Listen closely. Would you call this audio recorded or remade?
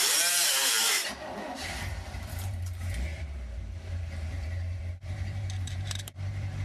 remade